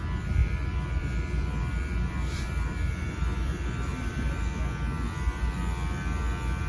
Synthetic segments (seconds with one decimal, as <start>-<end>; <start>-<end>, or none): 0.4-4.4

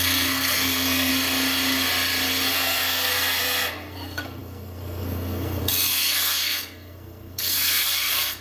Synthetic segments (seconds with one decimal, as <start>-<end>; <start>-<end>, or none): 0.0-1.1; 2.5-8.4

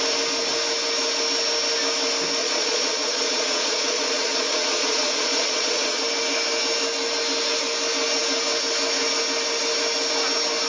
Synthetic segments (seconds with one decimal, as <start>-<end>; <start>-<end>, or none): 2.4-6.0

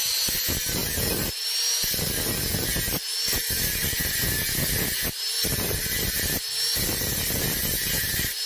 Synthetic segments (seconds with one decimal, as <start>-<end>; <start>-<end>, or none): none

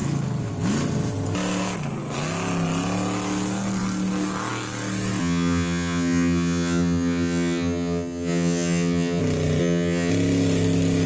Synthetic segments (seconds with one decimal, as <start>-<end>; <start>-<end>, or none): 5.2-9.2; 9.6-10.1